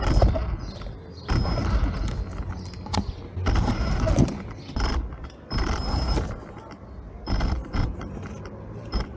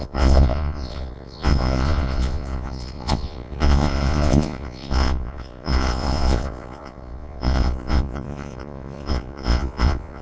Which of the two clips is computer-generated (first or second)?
second